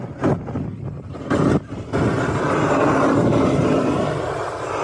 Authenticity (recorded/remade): recorded